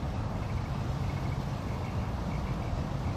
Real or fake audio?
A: real